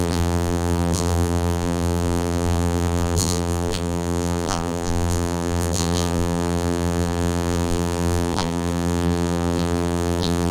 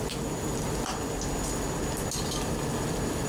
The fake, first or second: first